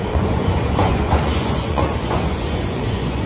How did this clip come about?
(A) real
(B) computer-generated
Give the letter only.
B